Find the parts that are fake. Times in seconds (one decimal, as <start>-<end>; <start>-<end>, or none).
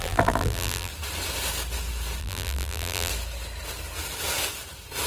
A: 0.0-0.9; 2.2-3.1